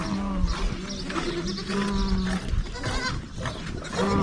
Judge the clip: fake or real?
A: real